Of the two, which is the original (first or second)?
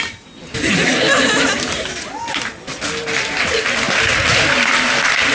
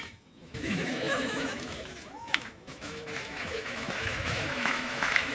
first